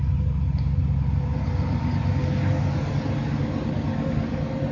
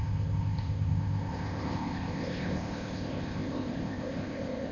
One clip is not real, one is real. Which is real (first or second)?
first